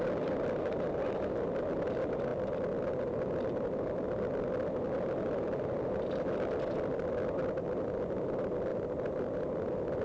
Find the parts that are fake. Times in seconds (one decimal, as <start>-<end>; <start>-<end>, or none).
8.7-9.4